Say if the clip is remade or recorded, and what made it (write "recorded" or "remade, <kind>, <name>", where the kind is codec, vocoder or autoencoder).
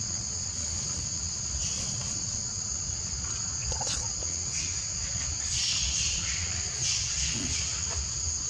remade, vocoder, Vocos